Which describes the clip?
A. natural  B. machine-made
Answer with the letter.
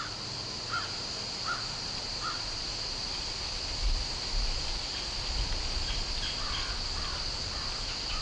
A